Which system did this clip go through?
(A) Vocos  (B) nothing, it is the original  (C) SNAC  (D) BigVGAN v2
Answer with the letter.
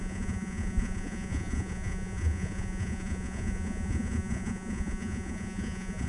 A